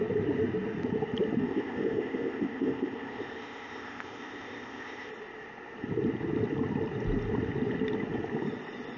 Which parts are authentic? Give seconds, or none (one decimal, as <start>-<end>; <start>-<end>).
0.0-1.4; 5.1-9.0